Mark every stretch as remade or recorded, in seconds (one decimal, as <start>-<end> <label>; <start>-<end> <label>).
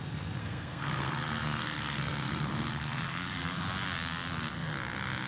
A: 0.0-0.4 recorded; 0.4-3.6 remade; 3.6-5.3 recorded